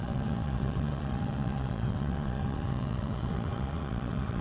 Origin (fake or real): fake